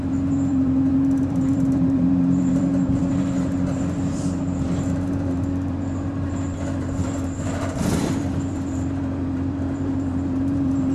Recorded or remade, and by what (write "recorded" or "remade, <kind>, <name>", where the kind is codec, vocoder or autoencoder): remade, vocoder, BigVGAN v2